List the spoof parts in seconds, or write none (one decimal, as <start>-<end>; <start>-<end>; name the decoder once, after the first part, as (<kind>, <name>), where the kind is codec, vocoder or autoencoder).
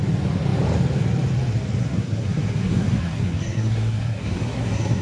1.8-5.0 (codec, SNAC)